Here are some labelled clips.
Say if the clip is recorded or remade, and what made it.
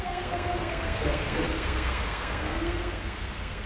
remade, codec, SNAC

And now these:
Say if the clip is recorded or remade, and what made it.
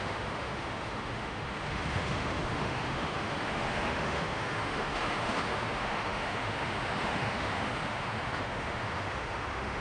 remade, autoencoder, DAC-VAE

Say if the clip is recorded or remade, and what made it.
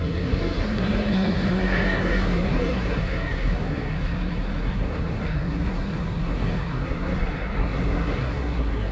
remade, codec, SNAC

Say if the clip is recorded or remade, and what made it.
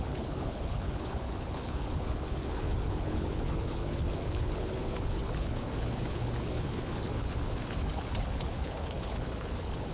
remade, codec, HILCodec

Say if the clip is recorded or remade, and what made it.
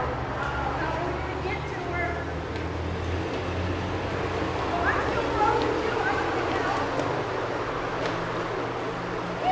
recorded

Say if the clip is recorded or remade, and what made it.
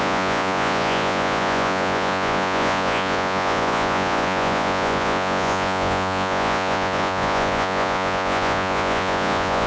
remade, vocoder, Vocos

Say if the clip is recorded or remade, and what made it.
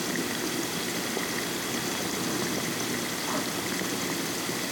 recorded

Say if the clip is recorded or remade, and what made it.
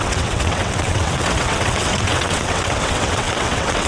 remade, vocoder, WaveNeXt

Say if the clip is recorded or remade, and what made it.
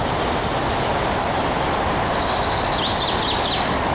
recorded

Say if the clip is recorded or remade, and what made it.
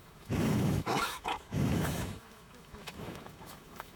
remade, autoencoder, DAC-VAE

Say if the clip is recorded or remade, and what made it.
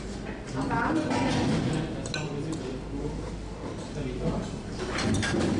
recorded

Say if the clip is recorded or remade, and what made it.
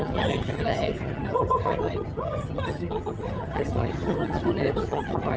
remade, vocoder, HiFi-GAN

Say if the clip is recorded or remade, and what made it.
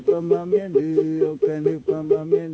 remade, codec, DAC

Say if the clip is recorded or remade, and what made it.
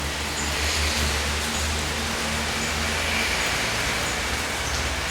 recorded